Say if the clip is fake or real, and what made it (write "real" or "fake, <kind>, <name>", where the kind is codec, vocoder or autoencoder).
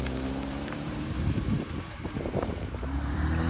fake, vocoder, BigVGAN v2